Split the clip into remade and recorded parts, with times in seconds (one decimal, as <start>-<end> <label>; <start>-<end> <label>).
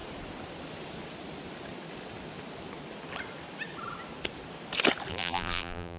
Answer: 0.0-5.1 recorded; 5.1-6.0 remade